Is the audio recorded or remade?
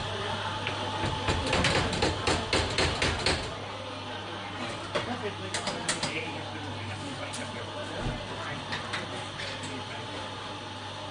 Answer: recorded